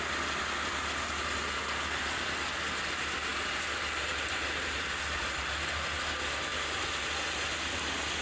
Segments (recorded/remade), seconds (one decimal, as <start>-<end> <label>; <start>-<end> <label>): 0.0-8.2 recorded